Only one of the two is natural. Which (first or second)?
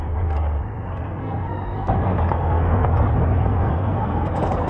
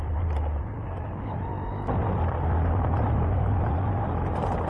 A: second